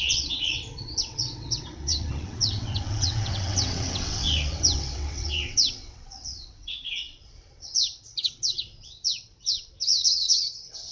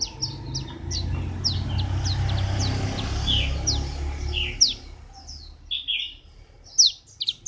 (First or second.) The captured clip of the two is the second